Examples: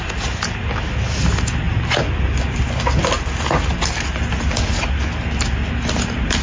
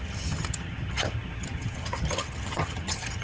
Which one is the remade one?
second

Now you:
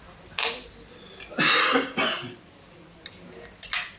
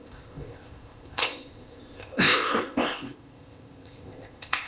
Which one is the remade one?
second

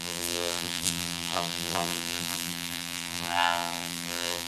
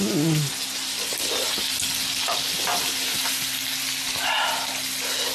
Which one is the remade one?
first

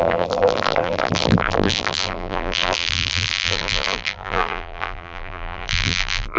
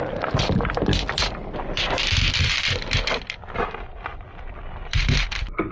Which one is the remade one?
first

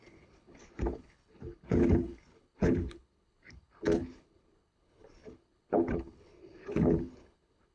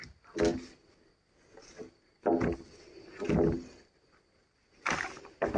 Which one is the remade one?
first